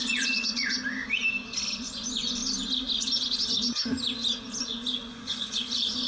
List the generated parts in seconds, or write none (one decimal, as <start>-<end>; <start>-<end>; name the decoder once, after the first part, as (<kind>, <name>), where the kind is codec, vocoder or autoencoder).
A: 0.0-0.8 (vocoder, Vocos); 1.8-2.4; 4.6-6.1